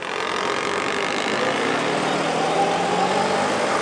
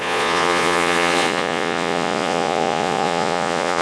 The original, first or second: first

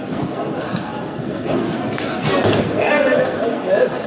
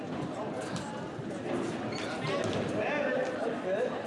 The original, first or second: second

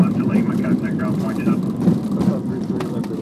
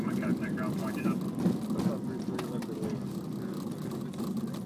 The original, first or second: second